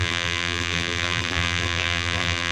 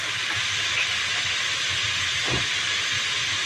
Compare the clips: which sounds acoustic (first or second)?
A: second